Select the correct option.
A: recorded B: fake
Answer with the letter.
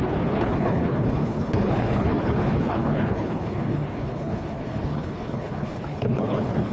B